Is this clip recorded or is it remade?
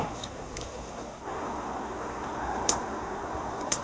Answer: remade